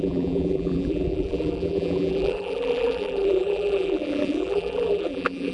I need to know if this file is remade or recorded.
remade